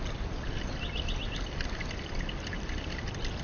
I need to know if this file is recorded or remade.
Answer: recorded